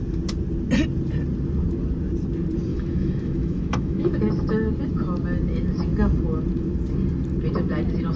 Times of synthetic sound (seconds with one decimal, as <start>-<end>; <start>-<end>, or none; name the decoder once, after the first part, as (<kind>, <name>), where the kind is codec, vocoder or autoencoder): 2.7-4.2 (autoencoder, DAC-VAE)